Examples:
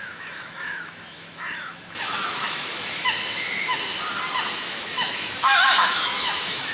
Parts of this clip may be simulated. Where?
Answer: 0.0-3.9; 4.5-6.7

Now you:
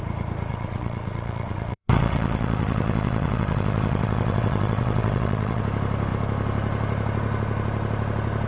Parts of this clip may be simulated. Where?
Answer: 0.5-5.6

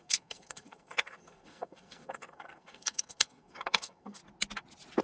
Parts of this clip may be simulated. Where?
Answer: 0.0-4.2

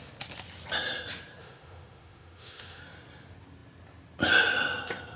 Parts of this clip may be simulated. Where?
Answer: 1.4-2.8

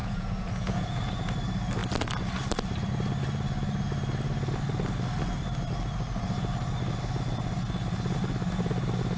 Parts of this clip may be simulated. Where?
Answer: 0.0-1.3

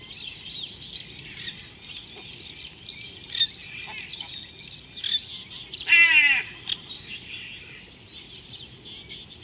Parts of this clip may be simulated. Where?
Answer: none